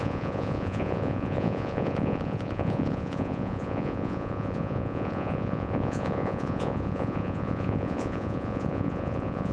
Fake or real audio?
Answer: fake